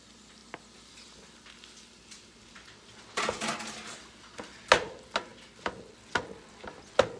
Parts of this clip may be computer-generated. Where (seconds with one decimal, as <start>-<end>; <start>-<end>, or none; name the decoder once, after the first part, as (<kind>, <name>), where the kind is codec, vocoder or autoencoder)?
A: none